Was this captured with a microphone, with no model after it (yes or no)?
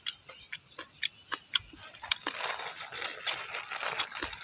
yes